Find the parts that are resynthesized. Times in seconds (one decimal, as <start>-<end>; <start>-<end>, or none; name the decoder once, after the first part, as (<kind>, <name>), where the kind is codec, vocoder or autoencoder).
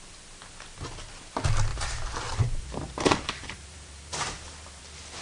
1.7-4.8 (vocoder, BigVGAN v2)